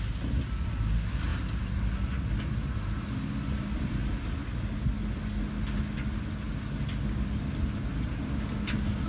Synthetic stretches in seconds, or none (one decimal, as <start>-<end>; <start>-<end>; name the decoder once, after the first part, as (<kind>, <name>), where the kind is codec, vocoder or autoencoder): none